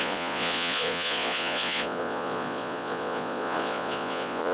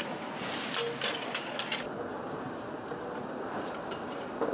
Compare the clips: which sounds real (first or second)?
second